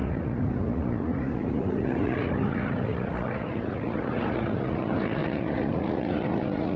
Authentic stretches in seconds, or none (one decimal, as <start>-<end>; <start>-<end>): none